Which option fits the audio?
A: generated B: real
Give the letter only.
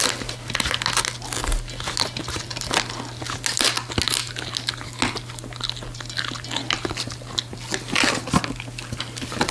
B